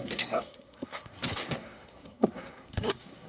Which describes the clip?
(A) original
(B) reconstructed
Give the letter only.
B